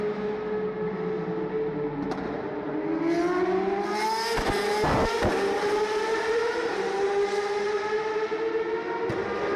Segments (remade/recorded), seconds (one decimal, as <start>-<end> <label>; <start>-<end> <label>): 0.0-6.1 recorded; 6.1-6.7 remade; 6.7-9.6 recorded

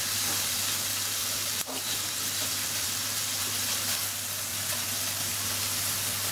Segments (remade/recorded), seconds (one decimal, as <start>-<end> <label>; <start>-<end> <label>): 0.0-1.2 recorded; 1.2-1.9 remade; 1.9-2.6 recorded; 2.6-3.4 remade; 3.4-6.3 recorded

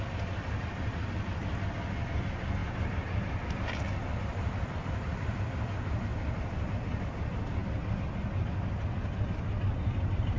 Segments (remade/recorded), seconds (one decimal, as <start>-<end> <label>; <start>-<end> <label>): 0.0-2.6 recorded; 2.6-3.7 remade; 3.7-10.4 recorded